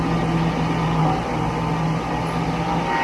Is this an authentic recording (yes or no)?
yes